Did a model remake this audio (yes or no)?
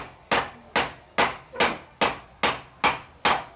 no